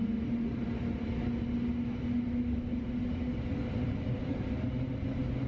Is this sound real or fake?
real